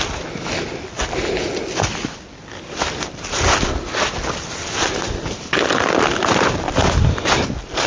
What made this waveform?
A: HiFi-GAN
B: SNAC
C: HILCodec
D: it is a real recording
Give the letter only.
D